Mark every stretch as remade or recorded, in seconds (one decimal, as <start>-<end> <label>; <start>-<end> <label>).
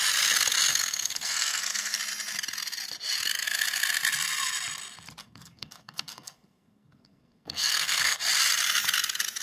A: 0.0-0.7 recorded; 0.7-2.0 remade; 2.0-5.2 recorded; 5.2-8.2 remade; 8.2-9.4 recorded